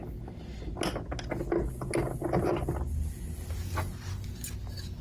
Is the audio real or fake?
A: real